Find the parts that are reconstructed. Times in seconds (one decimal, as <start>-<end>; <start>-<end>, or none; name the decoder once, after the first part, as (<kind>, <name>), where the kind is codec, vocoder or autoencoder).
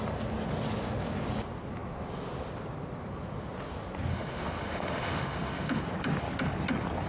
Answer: 4.1-5.8 (autoencoder, DAC-VAE)